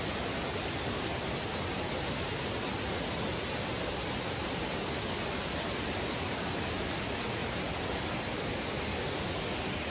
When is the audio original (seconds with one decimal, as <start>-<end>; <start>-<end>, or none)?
0.0-9.9